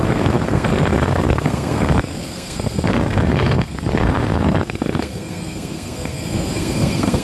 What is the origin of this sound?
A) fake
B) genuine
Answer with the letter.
A